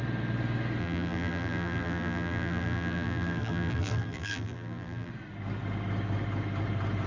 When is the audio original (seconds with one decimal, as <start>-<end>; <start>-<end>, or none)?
0.0-0.8; 5.1-7.1